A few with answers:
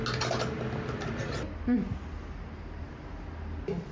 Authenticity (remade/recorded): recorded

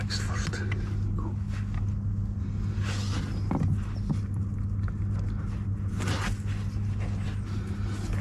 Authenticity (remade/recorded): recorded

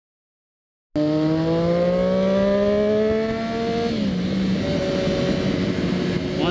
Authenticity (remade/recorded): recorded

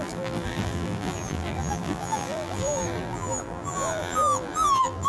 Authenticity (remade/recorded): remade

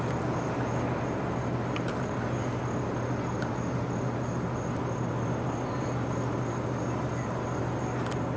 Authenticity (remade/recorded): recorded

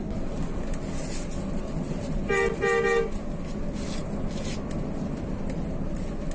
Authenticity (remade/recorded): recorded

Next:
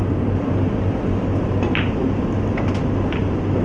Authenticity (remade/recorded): recorded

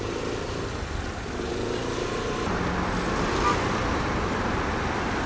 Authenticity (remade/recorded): recorded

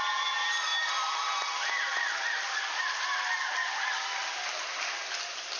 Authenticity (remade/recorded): recorded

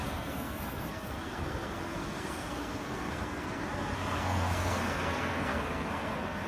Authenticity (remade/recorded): remade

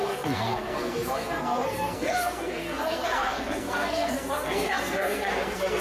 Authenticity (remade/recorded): remade